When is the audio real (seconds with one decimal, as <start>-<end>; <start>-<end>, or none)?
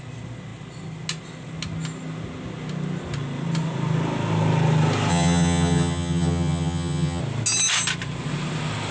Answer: 0.0-5.1; 7.2-8.9